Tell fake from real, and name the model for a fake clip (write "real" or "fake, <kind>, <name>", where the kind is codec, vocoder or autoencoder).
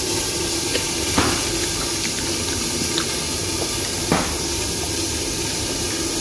real